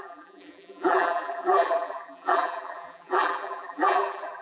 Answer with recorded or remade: remade